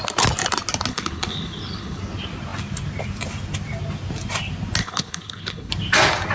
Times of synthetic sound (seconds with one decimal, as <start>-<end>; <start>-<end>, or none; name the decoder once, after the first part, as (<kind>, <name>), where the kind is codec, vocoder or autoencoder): 0.9-2.0 (codec, HILCodec); 4.8-5.7

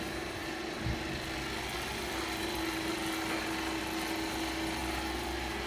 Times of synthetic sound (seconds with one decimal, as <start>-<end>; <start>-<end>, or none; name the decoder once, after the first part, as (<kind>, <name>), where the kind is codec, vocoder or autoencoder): none

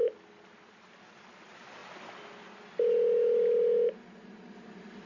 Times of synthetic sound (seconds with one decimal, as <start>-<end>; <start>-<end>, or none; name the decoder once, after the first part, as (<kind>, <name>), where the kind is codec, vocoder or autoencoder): none

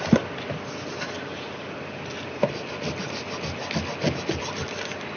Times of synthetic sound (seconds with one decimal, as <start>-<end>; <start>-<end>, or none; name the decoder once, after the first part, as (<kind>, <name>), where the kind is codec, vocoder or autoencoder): none

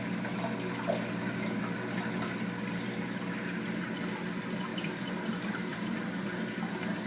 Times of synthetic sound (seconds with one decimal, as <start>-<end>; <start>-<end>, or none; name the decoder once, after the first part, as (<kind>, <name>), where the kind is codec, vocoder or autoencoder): 4.7-5.3 (vocoder, BigVGAN v2); 5.7-6.4

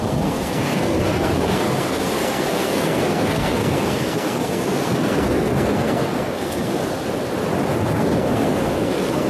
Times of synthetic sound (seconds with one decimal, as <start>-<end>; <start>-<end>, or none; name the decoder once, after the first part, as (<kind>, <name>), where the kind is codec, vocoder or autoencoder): 0.0-6.8 (codec, SNAC); 7.9-9.3

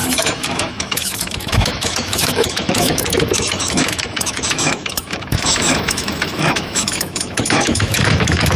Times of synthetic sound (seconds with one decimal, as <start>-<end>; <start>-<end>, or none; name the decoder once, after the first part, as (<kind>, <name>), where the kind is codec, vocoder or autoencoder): 0.0-8.6 (autoencoder, DAC-VAE)

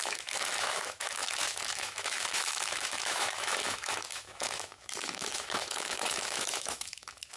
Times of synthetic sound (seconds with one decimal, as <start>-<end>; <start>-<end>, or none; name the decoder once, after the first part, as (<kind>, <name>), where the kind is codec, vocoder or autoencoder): 0.0-7.4 (autoencoder, DAC-VAE)